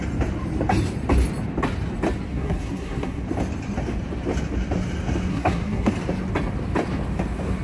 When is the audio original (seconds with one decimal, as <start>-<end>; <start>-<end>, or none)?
0.0-2.3; 3.2-5.3; 5.9-7.6